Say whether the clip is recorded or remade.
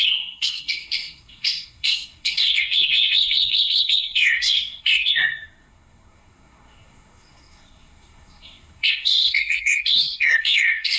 remade